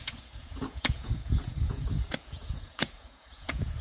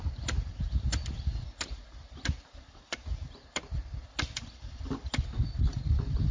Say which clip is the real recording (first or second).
second